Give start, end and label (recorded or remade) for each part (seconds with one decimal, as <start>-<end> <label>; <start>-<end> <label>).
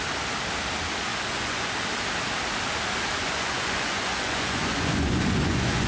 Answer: 0.0-1.1 recorded; 1.1-1.7 remade; 1.7-3.2 recorded; 3.2-5.9 remade